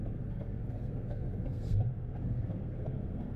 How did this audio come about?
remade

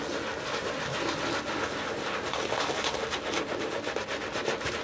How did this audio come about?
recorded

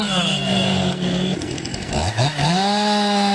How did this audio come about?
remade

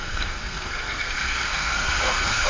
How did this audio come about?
remade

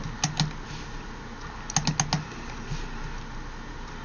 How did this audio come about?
recorded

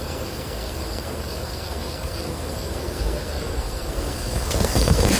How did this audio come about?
remade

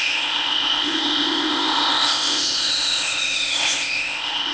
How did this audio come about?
remade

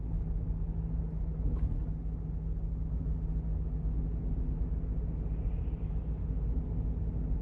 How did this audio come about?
recorded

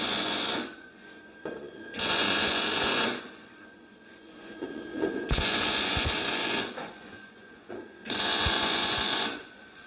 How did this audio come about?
remade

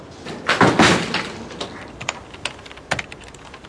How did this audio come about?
recorded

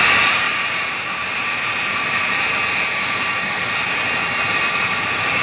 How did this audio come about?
remade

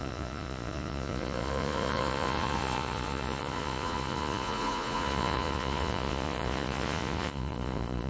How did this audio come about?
remade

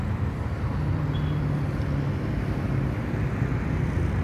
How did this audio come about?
recorded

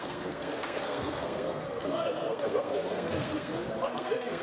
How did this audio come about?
remade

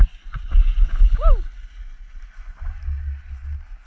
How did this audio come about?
recorded